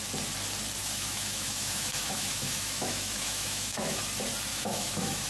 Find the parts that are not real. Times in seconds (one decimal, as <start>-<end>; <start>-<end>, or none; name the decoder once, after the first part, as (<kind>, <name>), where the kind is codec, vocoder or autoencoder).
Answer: 0.8-4.0 (autoencoder, DAC-VAE); 4.5-5.3